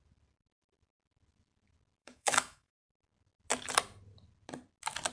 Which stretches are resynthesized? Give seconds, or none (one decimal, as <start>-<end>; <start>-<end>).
2.0-2.7